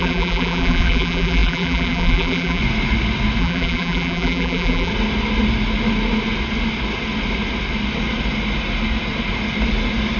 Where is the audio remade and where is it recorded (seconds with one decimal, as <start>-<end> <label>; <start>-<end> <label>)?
0.0-2.6 remade; 2.6-3.4 recorded; 3.4-4.9 remade; 4.9-10.2 recorded